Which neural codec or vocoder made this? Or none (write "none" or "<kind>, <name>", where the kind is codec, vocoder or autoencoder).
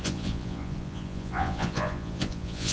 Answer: vocoder, Vocos